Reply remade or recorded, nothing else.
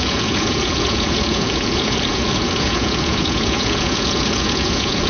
remade